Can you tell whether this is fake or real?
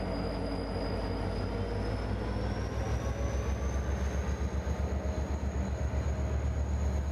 real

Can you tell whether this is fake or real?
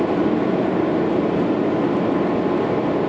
real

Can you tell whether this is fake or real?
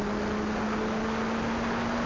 real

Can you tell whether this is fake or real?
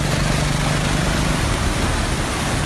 real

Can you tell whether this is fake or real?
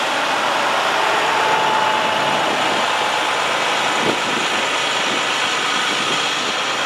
real